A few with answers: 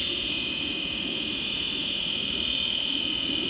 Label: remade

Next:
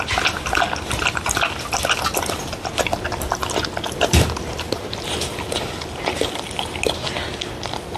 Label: recorded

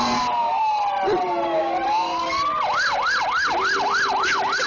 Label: recorded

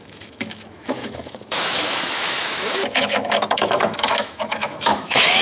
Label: remade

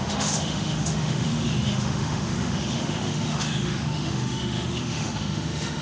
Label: remade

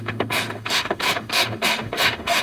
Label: remade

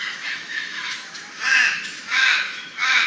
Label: remade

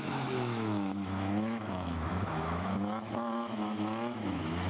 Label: remade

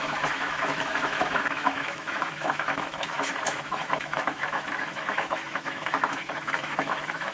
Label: remade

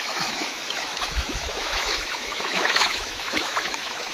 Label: remade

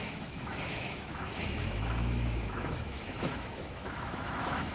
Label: remade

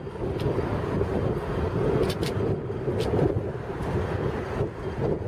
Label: recorded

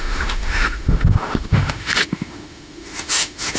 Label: remade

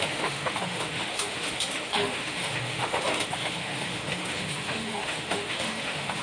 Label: remade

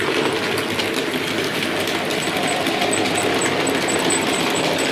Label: recorded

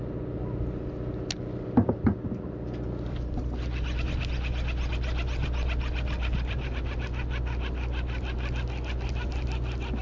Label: recorded